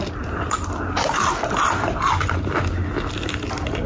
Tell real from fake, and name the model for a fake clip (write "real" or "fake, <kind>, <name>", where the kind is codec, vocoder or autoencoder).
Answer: real